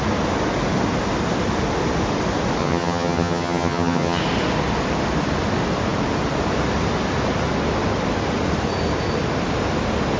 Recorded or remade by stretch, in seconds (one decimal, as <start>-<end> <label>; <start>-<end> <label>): 0.0-2.6 recorded; 2.6-4.2 remade; 4.2-10.2 recorded